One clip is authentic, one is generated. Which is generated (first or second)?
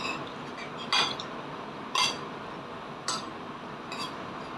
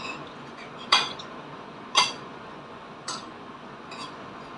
second